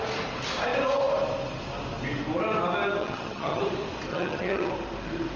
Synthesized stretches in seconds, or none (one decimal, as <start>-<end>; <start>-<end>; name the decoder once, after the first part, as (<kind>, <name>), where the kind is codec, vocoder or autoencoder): 3.0-3.6 (vocoder, HiFi-GAN); 4.1-4.7